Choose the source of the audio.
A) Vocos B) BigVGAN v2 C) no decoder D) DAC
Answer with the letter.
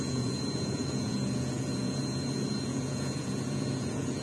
A